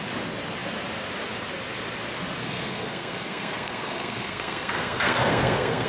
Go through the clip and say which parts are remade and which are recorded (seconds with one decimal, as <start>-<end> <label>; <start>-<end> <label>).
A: 0.0-2.4 recorded; 2.4-5.9 remade